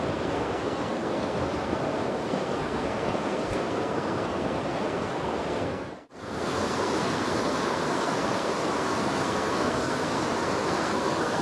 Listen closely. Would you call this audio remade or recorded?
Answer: remade